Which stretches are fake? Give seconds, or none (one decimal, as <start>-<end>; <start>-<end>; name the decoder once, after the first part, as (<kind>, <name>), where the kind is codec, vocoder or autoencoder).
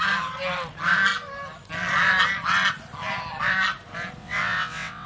4.2-5.1 (vocoder, WaveNeXt)